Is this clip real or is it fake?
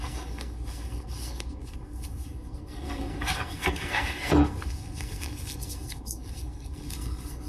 fake